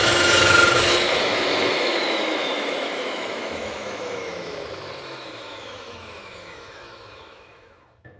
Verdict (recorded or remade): remade